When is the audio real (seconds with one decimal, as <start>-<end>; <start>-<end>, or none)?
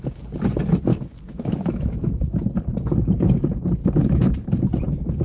0.0-0.9; 2.5-3.8; 4.6-5.2